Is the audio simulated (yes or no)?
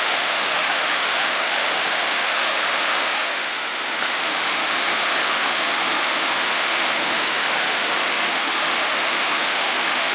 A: yes